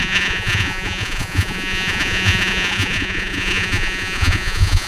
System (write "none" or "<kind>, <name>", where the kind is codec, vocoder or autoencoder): vocoder, Vocos